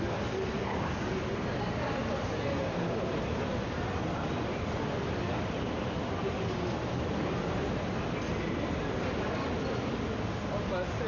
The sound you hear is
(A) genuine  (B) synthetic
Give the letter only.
A